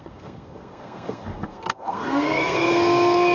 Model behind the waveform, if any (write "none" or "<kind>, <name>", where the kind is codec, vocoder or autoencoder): codec, SNAC